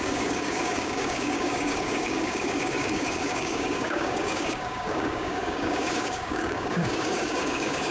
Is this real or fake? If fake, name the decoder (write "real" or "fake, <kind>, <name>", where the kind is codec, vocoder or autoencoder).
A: fake, codec, DAC